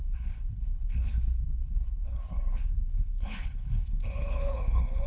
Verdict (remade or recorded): remade